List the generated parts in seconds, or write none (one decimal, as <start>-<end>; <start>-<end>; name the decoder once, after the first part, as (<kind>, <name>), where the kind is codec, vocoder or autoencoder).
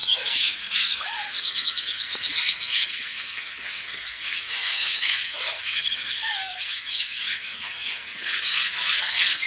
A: 0.0-9.5 (codec, SNAC)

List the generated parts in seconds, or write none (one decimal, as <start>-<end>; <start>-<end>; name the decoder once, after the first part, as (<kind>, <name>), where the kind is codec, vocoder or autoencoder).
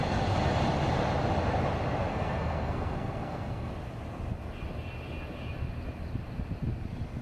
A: 2.1-3.7 (codec, SNAC)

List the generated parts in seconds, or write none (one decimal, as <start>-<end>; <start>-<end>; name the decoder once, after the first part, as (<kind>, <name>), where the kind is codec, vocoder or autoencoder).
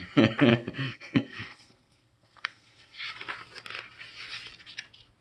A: 0.5-3.0 (codec, SNAC)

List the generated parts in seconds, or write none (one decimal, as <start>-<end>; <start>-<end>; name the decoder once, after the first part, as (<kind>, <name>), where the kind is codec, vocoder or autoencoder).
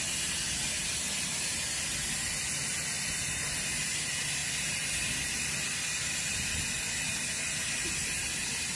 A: none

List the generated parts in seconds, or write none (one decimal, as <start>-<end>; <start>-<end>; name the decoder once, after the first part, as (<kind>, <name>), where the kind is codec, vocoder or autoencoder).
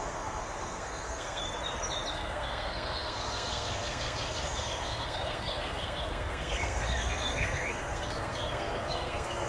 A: 0.0-1.4 (codec, SNAC); 2.1-9.5